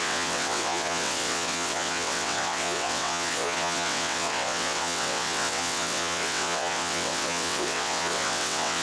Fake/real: fake